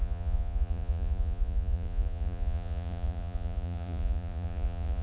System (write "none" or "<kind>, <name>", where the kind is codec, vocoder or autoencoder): vocoder, Vocos